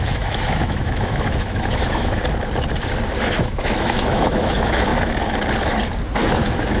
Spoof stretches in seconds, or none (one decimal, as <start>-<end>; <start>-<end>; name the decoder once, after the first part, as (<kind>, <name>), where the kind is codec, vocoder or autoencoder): 0.0-2.2 (autoencoder, DAC-VAE); 3.2-4.9; 6.2-6.8